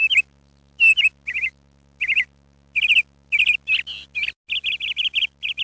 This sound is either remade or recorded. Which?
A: recorded